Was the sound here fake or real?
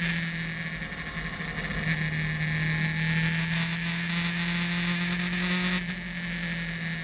real